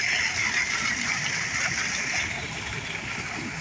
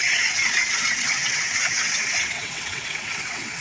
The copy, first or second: second